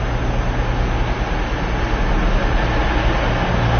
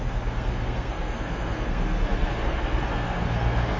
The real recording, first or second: first